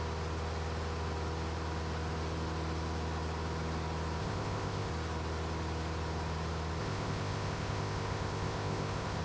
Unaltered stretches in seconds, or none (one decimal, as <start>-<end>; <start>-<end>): 0.0-4.2; 4.9-6.8